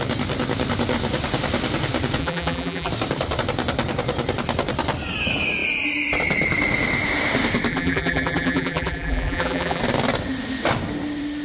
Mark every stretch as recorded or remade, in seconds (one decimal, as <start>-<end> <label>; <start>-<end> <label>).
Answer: 0.0-2.2 recorded; 2.2-2.9 remade; 2.9-7.7 recorded; 7.7-9.8 remade; 9.8-11.4 recorded